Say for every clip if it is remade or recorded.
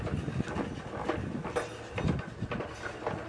recorded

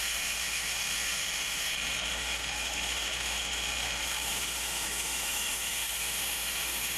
remade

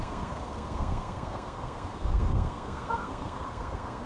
remade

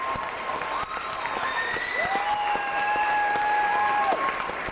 recorded